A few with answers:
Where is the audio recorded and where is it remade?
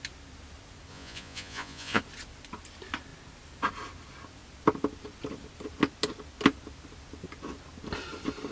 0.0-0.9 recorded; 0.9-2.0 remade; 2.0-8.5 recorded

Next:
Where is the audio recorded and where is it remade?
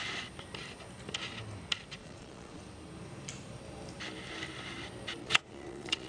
0.0-2.0 recorded; 2.0-2.6 remade; 2.6-5.2 recorded; 5.2-6.1 remade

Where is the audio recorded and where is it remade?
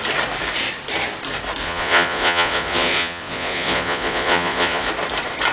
0.0-1.6 recorded; 1.6-4.9 remade; 4.9-5.5 recorded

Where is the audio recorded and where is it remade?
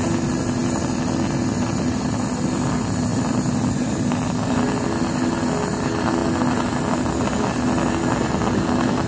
0.0-9.1 recorded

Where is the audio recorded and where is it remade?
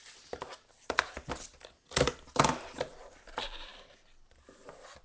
0.0-5.0 recorded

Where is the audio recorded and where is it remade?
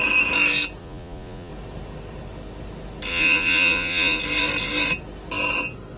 0.0-0.8 recorded; 0.8-1.5 remade; 1.5-3.1 recorded; 3.1-4.2 remade; 4.2-6.0 recorded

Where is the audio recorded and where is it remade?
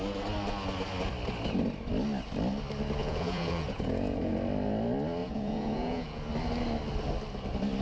0.0-3.0 recorded; 3.0-4.3 remade; 4.3-5.2 recorded; 5.2-6.3 remade; 6.3-7.8 recorded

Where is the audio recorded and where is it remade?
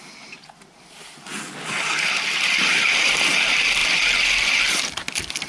0.0-5.5 recorded